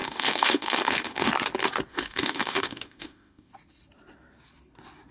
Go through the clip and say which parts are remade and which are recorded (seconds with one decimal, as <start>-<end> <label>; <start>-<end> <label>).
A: 0.0-1.3 remade; 1.3-1.9 recorded; 1.9-3.5 remade; 3.5-5.1 recorded